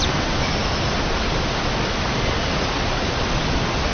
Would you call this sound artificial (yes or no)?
no